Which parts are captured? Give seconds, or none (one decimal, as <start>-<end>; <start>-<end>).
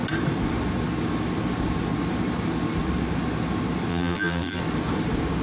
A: 0.0-3.9; 4.6-5.4